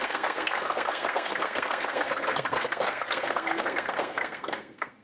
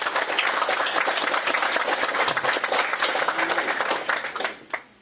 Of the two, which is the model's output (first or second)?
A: first